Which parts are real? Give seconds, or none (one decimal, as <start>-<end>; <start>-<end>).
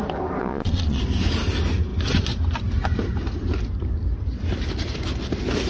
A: 0.0-0.4; 1.0-5.7